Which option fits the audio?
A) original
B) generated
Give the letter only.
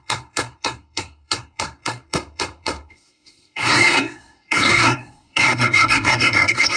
B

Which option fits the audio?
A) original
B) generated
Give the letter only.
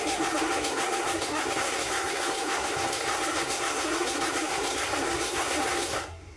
B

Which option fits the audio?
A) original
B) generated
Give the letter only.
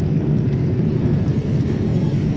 B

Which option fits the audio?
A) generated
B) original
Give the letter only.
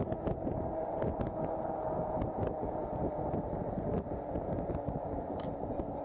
B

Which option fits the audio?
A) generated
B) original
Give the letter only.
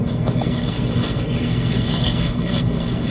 A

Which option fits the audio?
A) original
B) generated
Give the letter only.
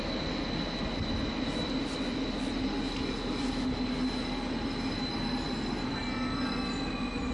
A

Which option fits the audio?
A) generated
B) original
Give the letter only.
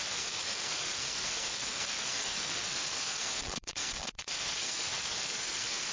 A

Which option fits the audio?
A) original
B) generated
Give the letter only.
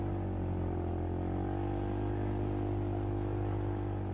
A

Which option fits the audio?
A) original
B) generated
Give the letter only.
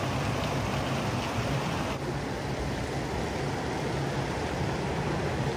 A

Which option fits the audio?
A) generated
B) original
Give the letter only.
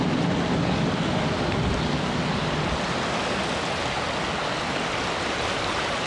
B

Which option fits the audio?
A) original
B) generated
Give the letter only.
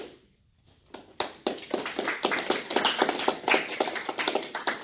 A